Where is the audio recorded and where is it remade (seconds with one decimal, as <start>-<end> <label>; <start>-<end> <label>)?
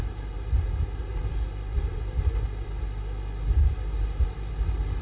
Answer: 0.0-5.0 recorded